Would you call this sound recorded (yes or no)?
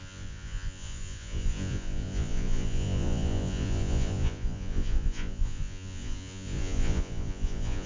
no